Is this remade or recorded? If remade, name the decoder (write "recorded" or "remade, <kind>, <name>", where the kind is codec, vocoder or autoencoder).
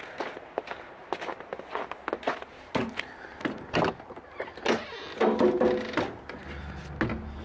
recorded